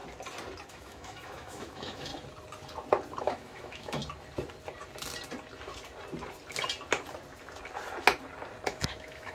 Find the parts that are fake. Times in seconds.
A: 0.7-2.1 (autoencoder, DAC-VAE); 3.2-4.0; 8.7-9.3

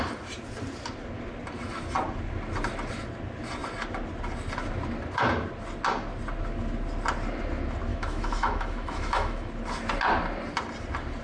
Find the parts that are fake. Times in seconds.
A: 7.9-9.5 (autoencoder, DAC-VAE)